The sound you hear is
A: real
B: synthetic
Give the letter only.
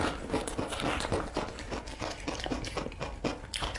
A